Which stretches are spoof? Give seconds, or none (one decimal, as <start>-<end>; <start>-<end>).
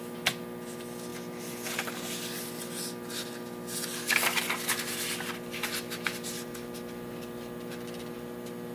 none